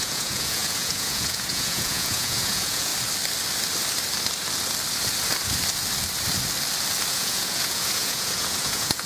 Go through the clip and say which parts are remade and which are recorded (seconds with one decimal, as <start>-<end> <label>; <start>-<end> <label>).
0.0-2.9 remade; 2.9-7.1 recorded; 7.1-9.1 remade